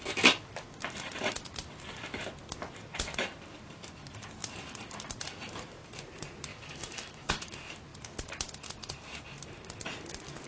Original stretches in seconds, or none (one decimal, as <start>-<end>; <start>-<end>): 0.0-6.5; 7.5-10.5